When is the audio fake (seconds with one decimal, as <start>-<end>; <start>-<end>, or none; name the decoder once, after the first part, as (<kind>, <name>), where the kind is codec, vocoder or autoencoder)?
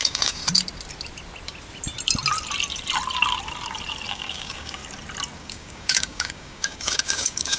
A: 0.0-0.4 (codec, DAC); 4.1-4.8; 5.4-7.6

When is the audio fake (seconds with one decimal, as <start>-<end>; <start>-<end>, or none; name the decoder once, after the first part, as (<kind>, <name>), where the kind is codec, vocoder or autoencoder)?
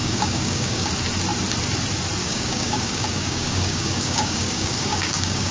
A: 0.0-0.9 (codec, DAC); 2.2-5.5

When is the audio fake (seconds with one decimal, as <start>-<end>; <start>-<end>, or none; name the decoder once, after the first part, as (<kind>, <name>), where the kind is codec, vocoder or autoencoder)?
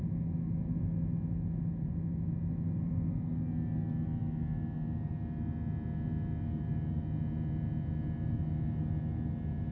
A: none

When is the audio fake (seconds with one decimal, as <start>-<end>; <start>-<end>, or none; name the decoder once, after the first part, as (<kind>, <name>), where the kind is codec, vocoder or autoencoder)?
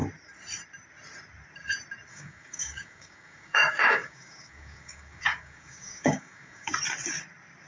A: 2.1-6.7 (codec, DAC)